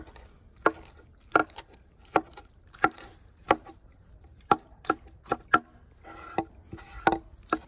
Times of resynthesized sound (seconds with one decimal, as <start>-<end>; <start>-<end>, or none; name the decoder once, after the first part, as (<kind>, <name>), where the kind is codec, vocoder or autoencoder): 1.4-5.4 (vocoder, BigVGAN v2)